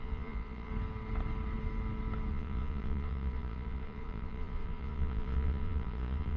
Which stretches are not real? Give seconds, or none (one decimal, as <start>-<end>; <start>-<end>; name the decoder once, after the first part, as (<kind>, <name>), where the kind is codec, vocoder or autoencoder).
0.0-0.7 (vocoder, Vocos); 2.3-6.4